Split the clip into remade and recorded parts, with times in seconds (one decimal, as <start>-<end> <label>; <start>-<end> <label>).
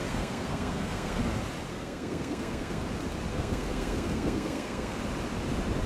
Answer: 0.0-1.2 remade; 1.2-1.7 recorded; 1.7-2.8 remade; 2.8-3.3 recorded; 3.3-5.0 remade; 5.0-5.9 recorded